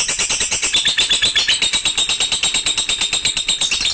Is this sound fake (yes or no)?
no